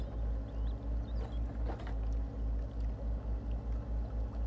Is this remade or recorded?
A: recorded